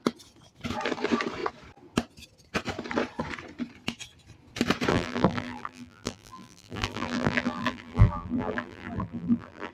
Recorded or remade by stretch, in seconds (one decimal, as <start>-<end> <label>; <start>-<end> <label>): 0.0-4.9 recorded; 4.9-9.7 remade